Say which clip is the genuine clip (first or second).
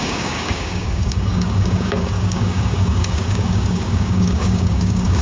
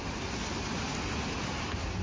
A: second